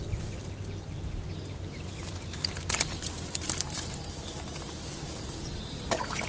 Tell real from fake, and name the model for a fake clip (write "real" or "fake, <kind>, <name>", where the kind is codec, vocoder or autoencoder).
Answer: real